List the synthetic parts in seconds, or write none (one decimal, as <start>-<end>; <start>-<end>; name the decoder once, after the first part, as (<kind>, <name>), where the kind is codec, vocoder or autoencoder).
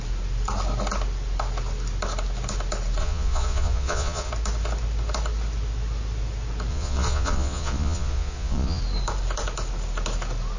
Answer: 3.0-4.3 (vocoder, Vocos); 6.7-8.8